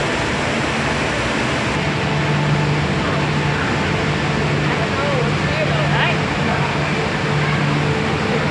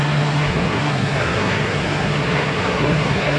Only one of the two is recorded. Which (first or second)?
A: first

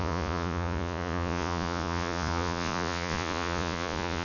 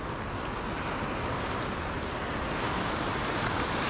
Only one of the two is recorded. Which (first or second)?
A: second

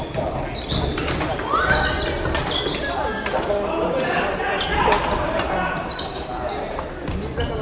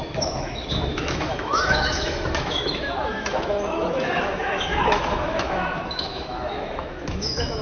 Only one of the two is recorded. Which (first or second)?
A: first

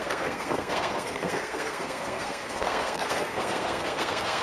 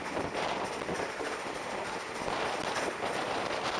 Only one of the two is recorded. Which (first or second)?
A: second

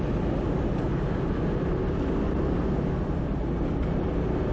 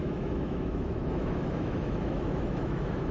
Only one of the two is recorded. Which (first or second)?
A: first